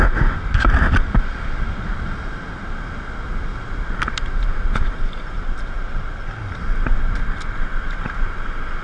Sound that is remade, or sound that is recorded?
recorded